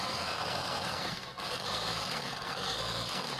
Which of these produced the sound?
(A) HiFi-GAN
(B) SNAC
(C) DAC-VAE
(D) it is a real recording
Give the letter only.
B